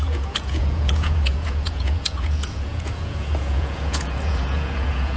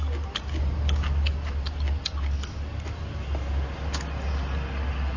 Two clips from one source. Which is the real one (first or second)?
second